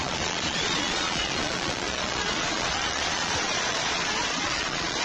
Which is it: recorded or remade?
remade